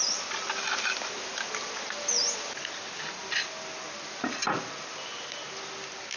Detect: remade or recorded recorded